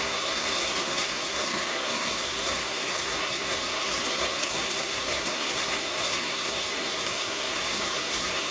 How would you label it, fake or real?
fake